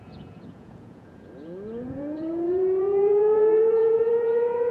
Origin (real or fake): fake